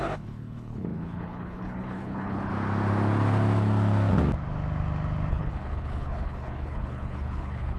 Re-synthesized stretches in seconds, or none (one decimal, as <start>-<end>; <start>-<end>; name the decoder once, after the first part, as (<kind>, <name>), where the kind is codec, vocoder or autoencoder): 0.0-2.5 (codec, HILCodec); 5.3-7.8